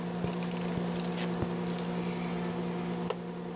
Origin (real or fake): real